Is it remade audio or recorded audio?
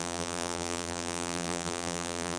remade